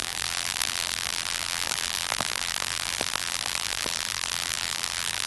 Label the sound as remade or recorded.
remade